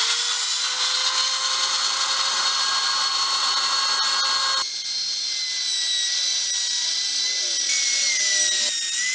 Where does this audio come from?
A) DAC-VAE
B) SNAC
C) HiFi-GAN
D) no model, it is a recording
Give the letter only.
D